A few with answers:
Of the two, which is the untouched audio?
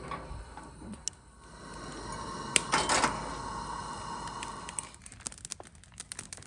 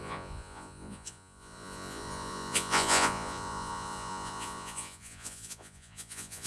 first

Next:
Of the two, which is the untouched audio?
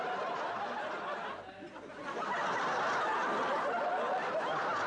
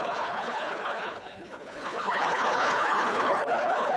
first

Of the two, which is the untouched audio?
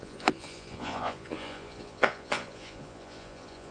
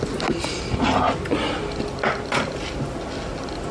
second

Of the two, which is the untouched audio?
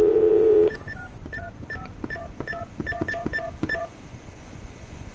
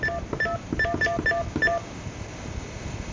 second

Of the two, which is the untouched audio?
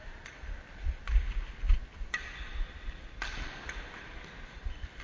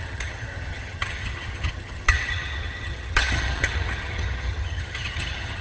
first